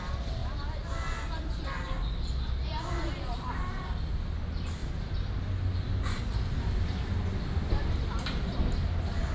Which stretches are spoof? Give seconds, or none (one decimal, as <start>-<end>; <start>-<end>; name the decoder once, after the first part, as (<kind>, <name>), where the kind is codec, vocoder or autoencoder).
none